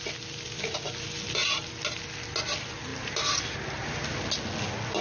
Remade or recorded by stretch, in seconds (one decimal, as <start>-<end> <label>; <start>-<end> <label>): 0.0-5.0 recorded